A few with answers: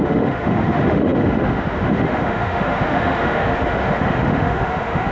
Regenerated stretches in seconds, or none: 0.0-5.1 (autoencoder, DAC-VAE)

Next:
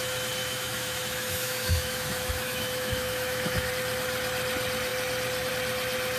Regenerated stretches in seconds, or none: 0.4-3.7 (autoencoder, DAC-VAE)

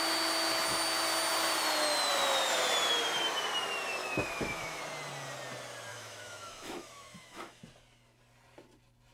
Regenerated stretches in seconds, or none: 4.0-4.8 (autoencoder, DAC-VAE); 5.9-7.6

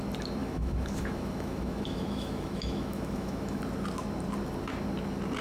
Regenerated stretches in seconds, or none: 0.4-3.6 (autoencoder, DAC-VAE)

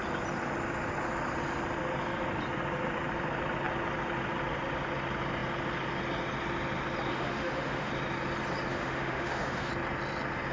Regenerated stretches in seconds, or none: 7.1-7.9 (autoencoder, DAC-VAE); 8.7-9.7

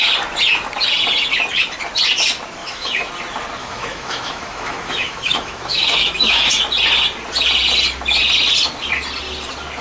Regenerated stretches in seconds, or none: 2.6-3.1 (autoencoder, DAC-VAE); 3.6-6.5

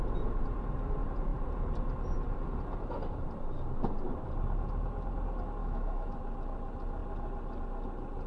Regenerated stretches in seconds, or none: 5.6-6.2 (autoencoder, DAC-VAE)